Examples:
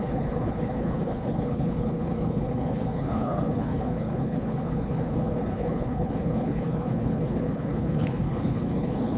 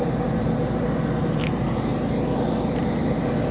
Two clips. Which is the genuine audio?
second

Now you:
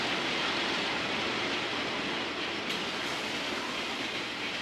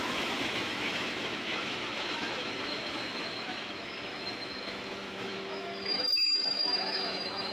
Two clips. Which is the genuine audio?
first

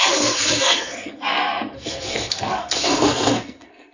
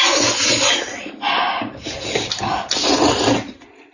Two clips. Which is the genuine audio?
second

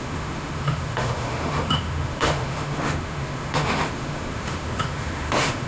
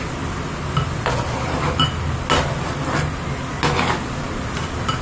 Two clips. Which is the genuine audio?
second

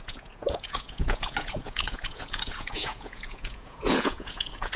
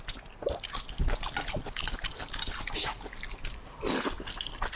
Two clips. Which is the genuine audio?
second